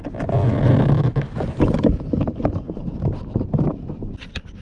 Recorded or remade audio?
recorded